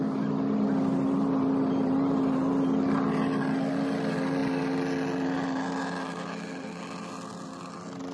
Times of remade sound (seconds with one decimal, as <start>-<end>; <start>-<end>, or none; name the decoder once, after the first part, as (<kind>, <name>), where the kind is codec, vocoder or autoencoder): none